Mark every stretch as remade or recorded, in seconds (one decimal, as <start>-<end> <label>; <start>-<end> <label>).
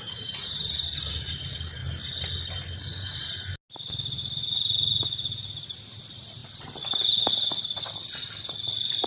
0.0-9.1 recorded